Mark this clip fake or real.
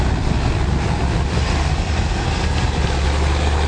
real